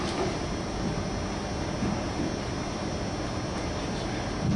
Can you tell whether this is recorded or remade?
recorded